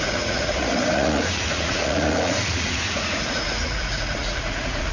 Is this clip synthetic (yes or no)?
yes